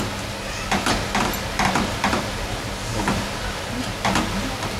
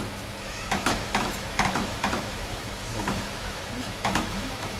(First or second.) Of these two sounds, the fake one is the second